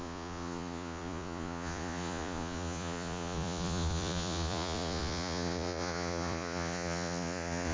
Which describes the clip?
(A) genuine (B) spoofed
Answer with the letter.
B